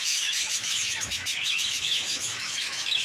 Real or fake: fake